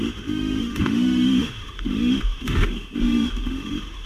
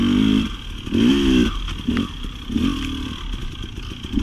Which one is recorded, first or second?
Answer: second